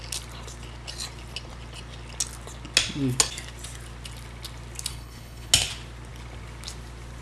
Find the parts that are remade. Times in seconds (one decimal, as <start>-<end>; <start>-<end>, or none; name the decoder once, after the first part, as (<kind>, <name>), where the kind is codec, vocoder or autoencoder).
4.9-5.5 (codec, HILCodec)